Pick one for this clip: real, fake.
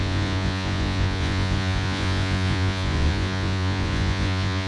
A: fake